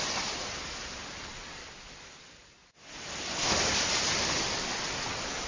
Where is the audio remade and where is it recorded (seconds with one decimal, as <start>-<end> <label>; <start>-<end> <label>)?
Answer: 0.0-5.5 recorded